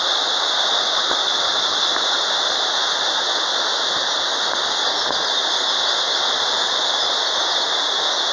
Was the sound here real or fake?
real